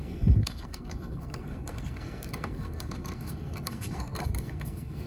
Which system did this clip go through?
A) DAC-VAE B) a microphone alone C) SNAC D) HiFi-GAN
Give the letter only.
C